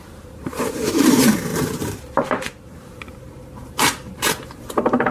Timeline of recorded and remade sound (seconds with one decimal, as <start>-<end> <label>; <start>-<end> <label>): 0.0-5.1 remade